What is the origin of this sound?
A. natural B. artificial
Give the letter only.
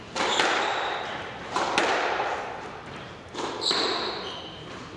B